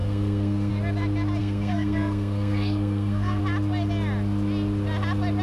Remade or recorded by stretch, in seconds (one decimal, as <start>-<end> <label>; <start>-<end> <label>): 0.0-0.7 remade; 0.7-1.4 recorded; 1.4-3.4 remade; 3.4-5.4 recorded